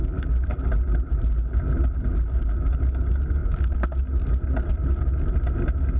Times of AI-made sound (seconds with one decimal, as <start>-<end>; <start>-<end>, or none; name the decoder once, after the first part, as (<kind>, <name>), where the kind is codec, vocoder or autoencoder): 0.0-2.8 (vocoder, BigVGAN v2)